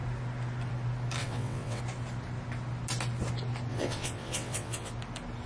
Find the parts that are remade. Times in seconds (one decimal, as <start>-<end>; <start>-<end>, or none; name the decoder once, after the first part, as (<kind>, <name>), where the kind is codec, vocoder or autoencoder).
1.2-1.8 (vocoder, WaveNeXt); 3.7-4.9